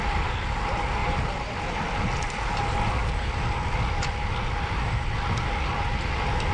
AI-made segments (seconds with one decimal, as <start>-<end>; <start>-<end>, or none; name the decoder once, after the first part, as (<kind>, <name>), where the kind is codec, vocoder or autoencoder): 1.0-1.6 (vocoder, BigVGAN v2)